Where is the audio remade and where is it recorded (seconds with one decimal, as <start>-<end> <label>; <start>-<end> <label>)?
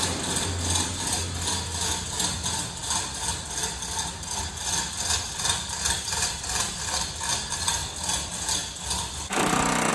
0.0-9.9 recorded